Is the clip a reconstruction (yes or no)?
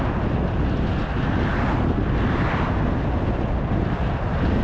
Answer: no